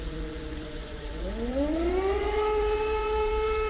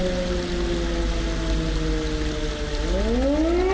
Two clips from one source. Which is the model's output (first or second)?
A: first